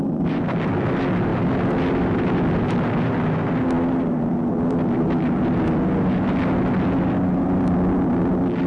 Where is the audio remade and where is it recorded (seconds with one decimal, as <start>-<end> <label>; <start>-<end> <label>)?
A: 0.0-8.7 recorded